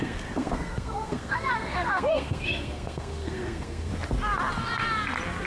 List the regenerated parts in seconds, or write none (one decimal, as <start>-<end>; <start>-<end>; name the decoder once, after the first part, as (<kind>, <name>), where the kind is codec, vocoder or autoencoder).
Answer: 0.0-3.9 (codec, SNAC)